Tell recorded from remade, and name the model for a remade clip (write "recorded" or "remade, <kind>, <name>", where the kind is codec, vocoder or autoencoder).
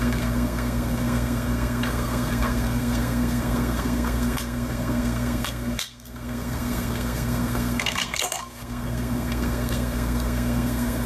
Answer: remade, codec, SNAC